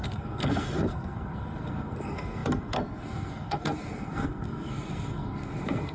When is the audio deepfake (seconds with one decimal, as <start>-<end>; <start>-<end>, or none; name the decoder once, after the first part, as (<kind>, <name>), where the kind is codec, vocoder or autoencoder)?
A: 0.0-5.9 (codec, SNAC)